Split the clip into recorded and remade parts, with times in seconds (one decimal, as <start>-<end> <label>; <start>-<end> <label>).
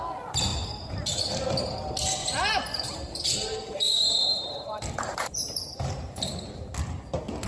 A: 0.0-2.2 recorded; 2.2-6.7 remade; 6.7-7.5 recorded